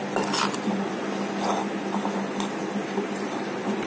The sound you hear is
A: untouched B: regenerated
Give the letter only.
A